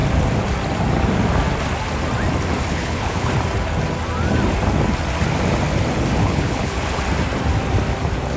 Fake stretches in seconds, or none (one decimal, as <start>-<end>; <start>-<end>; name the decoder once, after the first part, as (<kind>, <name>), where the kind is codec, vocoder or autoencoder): 2.7-3.3 (codec, HILCodec); 6.2-7.0

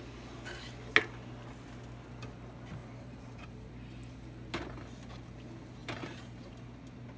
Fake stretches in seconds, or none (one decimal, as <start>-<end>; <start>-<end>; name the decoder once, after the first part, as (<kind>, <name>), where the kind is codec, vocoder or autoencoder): 2.8-3.7 (vocoder, BigVGAN v2); 5.8-6.5

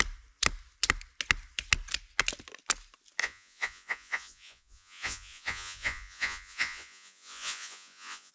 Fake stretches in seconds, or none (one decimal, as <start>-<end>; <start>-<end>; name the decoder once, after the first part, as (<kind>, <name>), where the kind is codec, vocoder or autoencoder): 3.2-8.3 (vocoder, Vocos)